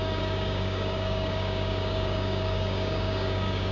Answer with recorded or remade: remade